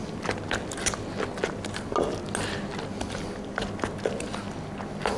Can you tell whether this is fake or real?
real